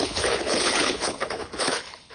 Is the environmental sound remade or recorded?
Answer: remade